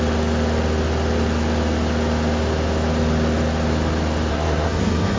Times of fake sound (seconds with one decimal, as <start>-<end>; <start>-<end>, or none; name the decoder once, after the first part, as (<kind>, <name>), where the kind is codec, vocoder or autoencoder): 4.3-5.2 (codec, SNAC)